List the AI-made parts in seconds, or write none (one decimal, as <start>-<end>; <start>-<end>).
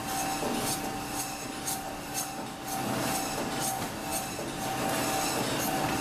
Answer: none